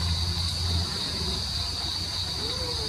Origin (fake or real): real